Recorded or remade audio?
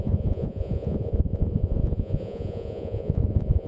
remade